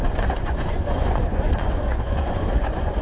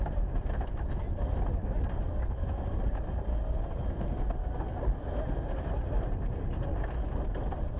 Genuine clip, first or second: second